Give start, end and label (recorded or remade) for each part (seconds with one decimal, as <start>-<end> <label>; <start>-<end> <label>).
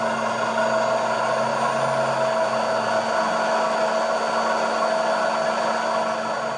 0.0-6.6 recorded